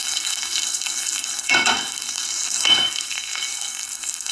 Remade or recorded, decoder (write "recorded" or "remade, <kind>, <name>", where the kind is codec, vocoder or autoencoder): remade, codec, SNAC